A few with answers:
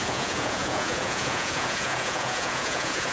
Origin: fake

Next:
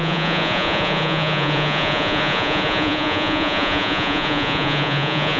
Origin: fake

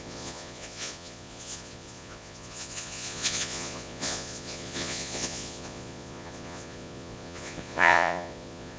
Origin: fake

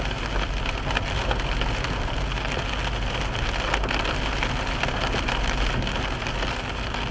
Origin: real